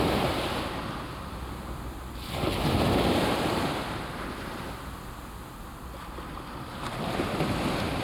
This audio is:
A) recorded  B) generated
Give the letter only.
A